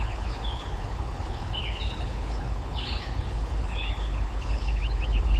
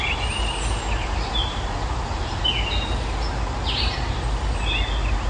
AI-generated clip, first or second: first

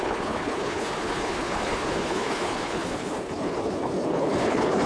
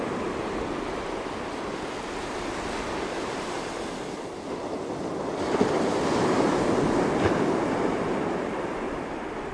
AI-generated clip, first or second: first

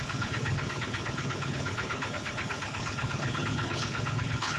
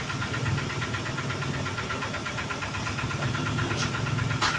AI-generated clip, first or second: first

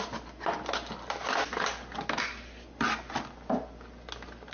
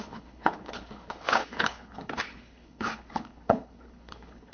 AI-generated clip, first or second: second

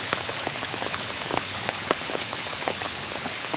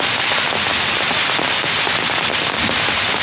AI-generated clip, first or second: first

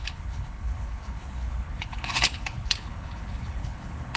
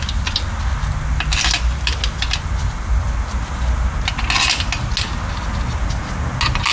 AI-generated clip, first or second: first